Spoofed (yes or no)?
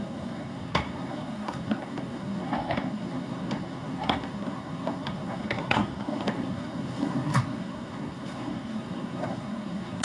yes